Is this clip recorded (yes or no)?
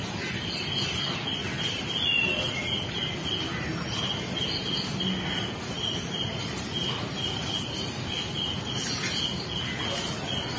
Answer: yes